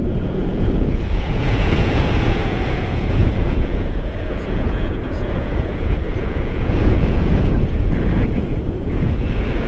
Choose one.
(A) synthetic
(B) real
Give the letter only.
A